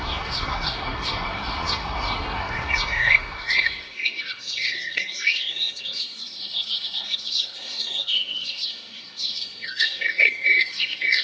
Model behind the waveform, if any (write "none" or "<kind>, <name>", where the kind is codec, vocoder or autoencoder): codec, SNAC